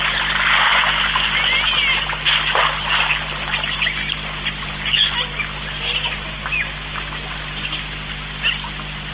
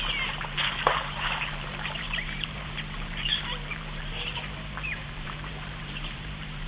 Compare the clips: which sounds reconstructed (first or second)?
second